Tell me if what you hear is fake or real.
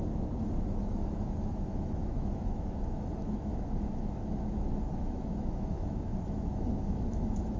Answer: fake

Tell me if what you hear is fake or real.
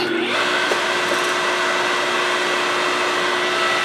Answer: real